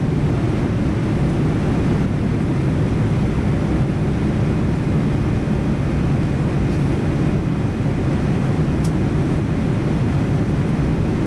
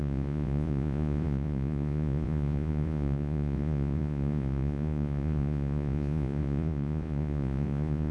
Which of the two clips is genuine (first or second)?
first